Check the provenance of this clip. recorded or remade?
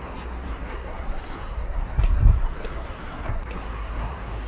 remade